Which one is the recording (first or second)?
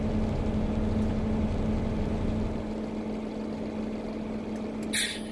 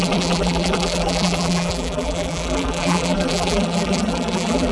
first